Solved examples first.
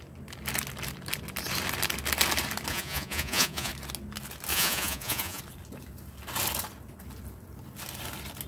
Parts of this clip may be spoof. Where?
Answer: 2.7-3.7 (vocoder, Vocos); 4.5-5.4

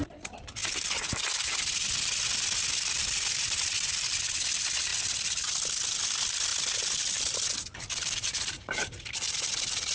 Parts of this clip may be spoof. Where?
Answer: 0.0-0.6 (vocoder, BigVGAN v2); 4.0-4.9; 6.0-6.5; 7.2-9.9

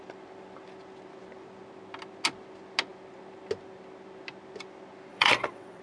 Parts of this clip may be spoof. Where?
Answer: 5.1-5.8 (vocoder, WaveNeXt)

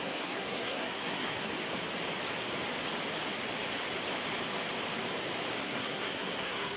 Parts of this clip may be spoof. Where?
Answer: 0.0-1.5 (codec, SNAC); 5.6-6.8

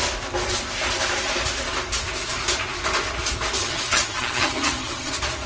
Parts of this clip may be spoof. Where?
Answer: 3.6-5.1 (vocoder, HiFi-GAN)